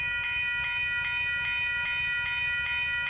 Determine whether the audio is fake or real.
real